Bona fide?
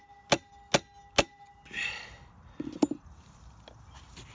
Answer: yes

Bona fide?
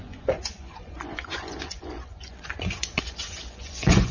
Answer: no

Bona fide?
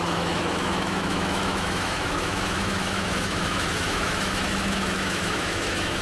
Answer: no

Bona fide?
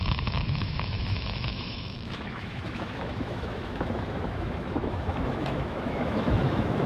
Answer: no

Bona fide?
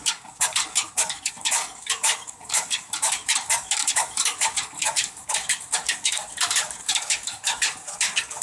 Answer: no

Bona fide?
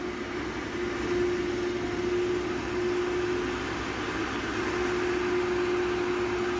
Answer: yes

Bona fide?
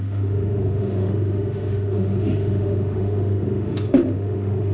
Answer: no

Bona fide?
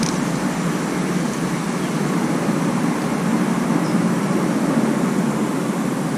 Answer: yes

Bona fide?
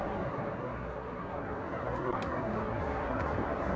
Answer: no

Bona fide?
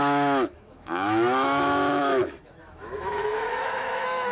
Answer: no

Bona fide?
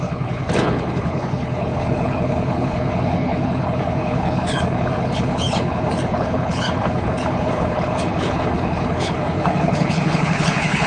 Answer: no